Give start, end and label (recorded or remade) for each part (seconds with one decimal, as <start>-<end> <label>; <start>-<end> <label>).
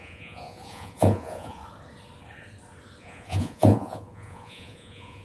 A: 0.0-1.6 remade; 1.6-3.0 recorded; 3.0-5.2 remade